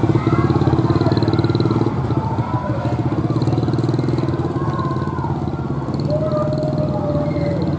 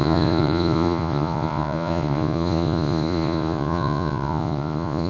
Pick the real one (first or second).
first